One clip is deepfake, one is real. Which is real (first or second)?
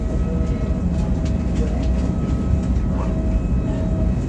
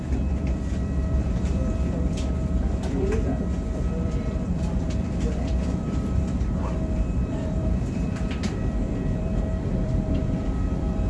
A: first